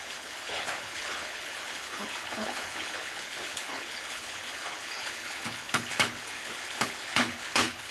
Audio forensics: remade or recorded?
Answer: remade